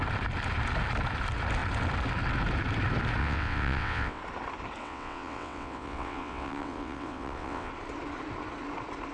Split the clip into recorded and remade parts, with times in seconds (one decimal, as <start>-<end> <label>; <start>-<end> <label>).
0.0-3.2 recorded; 3.2-4.2 remade; 4.2-4.8 recorded; 4.8-7.7 remade; 7.7-9.1 recorded